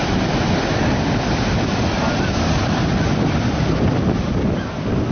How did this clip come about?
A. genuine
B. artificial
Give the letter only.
A